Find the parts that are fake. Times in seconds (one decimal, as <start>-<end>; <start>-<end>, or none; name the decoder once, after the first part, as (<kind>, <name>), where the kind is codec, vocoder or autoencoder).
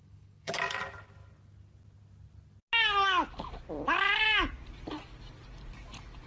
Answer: 0.0-0.6 (codec, HILCodec)